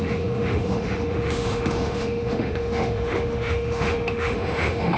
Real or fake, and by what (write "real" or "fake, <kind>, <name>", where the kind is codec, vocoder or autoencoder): fake, autoencoder, DAC-VAE